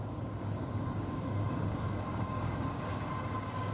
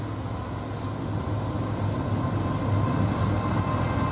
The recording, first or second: second